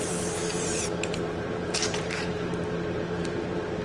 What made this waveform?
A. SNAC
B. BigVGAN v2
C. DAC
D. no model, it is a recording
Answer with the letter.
B